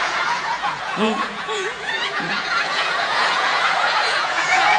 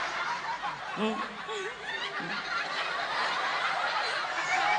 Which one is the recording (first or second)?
second